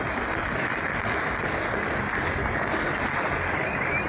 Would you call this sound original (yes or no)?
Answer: yes